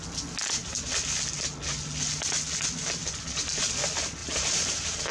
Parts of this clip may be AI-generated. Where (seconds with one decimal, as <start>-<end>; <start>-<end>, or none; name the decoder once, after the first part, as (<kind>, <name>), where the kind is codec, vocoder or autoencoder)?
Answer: 4.2-5.1 (vocoder, BigVGAN v2)